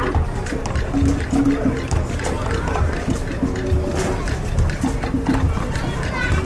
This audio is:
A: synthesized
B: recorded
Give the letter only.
B